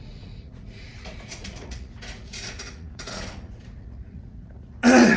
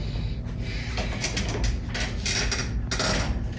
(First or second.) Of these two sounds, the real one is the second